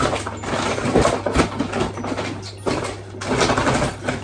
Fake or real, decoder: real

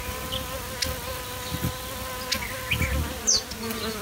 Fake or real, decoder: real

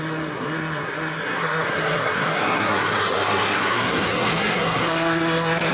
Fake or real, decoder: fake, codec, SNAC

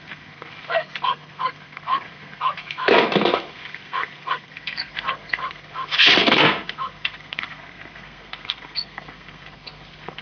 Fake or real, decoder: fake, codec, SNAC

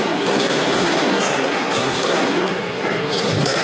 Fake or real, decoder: fake, codec, SNAC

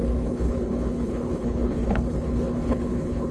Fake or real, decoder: fake, codec, HILCodec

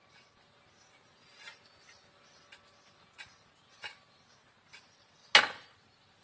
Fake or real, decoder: real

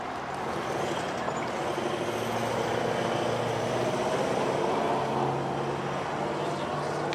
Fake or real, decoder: real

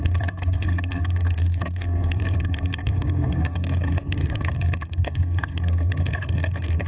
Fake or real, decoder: fake, codec, SNAC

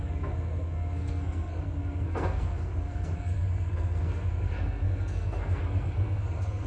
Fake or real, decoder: fake, codec, SNAC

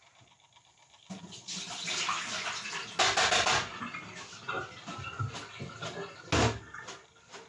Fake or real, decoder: real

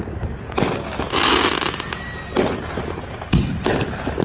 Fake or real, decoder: real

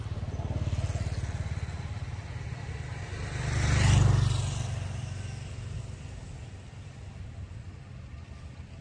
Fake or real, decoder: real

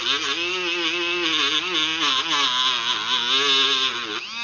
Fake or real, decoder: real